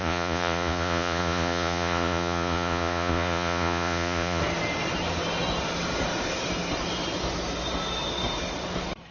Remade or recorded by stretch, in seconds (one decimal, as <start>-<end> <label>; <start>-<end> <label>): 0.0-4.4 remade; 4.4-9.1 recorded